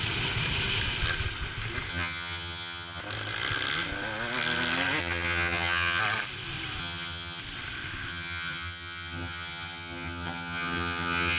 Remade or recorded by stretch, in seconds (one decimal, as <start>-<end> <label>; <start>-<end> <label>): 0.0-1.9 recorded; 1.9-3.0 remade; 3.0-5.0 recorded; 5.0-6.0 remade; 6.0-6.8 recorded; 6.8-7.4 remade; 7.4-8.1 recorded; 8.1-11.4 remade